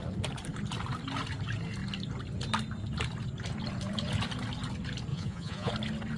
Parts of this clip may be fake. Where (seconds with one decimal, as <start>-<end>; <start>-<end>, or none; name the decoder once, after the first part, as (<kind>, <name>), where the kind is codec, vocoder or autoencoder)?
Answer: 5.1-5.7 (vocoder, Vocos)